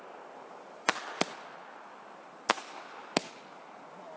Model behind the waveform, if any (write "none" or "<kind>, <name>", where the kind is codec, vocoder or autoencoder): none